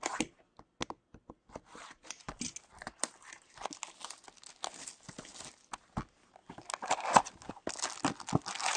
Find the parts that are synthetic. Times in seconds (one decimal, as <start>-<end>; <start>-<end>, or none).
none